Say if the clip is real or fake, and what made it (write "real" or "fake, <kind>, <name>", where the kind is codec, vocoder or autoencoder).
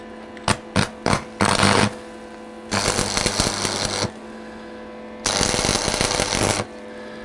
real